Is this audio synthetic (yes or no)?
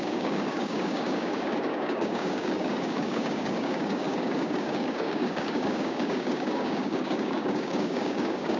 yes